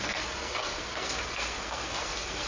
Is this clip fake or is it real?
fake